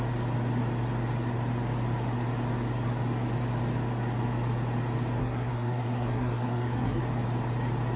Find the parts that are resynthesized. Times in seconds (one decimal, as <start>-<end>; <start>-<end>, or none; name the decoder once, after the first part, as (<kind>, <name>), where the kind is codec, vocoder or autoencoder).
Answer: 5.2-7.0 (codec, SNAC)